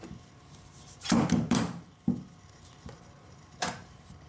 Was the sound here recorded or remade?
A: remade